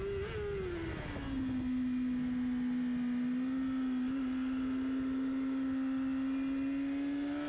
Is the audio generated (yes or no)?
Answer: no